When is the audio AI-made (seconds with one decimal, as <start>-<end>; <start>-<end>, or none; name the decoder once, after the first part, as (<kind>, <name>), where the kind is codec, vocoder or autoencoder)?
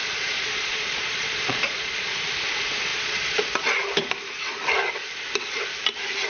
0.0-2.2 (vocoder, Vocos); 2.9-3.4